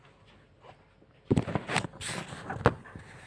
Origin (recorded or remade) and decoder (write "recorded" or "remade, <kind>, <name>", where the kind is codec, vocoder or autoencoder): recorded